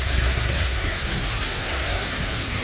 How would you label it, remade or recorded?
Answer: remade